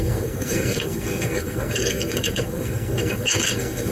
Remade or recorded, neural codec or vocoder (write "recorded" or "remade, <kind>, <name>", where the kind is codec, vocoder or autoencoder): remade, codec, SNAC